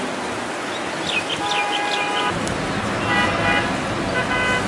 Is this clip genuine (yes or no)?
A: yes